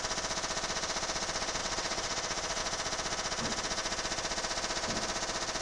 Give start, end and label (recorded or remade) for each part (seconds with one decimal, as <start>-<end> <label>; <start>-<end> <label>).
0.0-1.6 recorded; 1.6-2.6 remade; 2.6-5.6 recorded